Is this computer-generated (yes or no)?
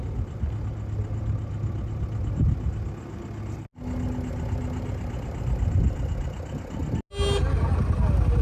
no